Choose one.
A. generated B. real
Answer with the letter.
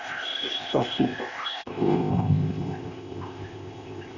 A